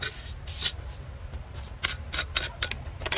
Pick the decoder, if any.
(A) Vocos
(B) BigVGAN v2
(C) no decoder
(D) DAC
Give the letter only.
C